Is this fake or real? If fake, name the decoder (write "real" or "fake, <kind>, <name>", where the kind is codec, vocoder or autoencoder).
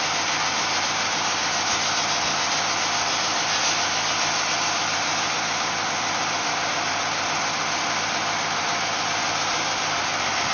real